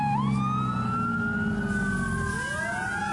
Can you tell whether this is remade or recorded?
recorded